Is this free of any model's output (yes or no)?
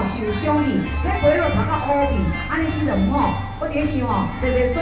yes